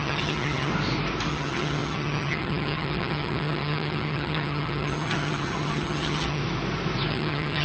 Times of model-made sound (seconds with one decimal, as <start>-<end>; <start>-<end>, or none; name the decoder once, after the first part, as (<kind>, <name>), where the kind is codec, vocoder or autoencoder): 0.0-0.7 (vocoder, HiFi-GAN); 1.3-6.4; 7.1-7.6